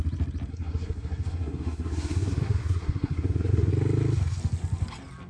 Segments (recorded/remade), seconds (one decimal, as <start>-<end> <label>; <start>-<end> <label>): 0.0-0.5 recorded; 0.5-3.7 remade; 3.7-5.3 recorded